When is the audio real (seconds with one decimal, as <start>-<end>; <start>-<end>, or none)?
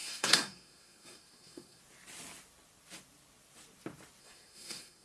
1.8-4.2